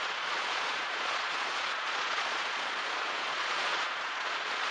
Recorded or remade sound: remade